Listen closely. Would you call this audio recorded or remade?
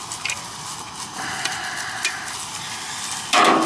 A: recorded